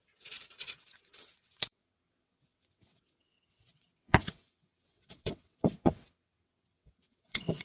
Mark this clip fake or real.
fake